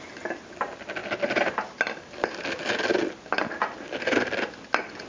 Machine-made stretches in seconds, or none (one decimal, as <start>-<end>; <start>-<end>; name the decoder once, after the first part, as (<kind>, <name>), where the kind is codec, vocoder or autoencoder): none

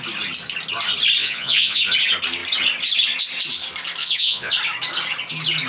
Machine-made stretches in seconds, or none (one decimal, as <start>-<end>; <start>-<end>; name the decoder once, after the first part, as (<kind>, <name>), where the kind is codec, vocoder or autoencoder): 1.2-1.8 (vocoder, Vocos); 4.0-4.5

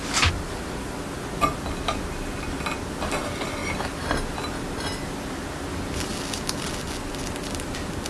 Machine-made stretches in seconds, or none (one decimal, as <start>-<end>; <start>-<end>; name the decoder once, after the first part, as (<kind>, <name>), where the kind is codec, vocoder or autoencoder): none

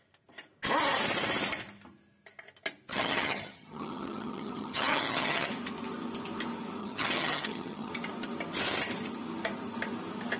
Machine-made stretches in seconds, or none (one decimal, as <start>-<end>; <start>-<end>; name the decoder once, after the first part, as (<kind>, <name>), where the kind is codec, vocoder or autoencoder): 2.9-5.5 (vocoder, HiFi-GAN); 6.8-7.9

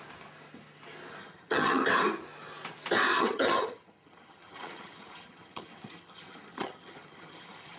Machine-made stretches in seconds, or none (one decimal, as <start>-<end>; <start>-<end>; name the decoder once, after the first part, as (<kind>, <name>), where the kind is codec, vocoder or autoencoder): 1.2-1.8 (vocoder, HiFi-GAN); 3.1-7.8

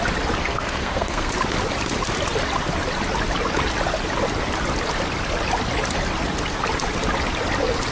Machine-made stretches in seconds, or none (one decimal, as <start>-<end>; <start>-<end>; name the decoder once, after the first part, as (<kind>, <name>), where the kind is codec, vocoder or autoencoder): 0.4-1.3 (codec, SNAC)

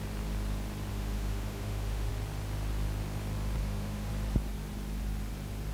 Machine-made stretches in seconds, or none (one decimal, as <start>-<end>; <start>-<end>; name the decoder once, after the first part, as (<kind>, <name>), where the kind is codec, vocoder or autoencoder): 0.9-2.1 (autoencoder, DAC-VAE); 3.6-4.1